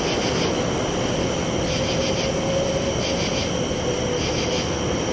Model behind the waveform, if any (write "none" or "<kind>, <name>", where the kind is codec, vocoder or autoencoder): none